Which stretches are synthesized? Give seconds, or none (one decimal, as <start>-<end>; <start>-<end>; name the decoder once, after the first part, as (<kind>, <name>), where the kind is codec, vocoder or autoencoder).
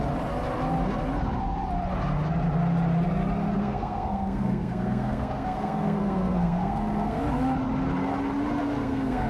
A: 3.6-7.2 (codec, SNAC); 8.6-9.3